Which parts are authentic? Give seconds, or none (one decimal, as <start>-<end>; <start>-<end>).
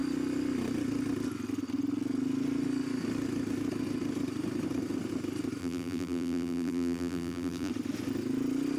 0.0-5.6; 7.7-8.8